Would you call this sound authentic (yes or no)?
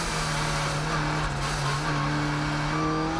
yes